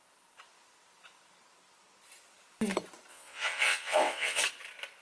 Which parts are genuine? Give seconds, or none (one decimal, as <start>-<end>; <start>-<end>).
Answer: 0.0-3.1; 4.4-5.0